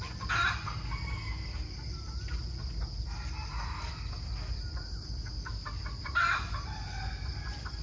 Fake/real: real